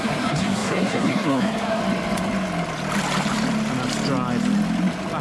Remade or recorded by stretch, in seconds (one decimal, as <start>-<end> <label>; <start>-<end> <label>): 0.0-1.8 remade; 1.8-5.2 recorded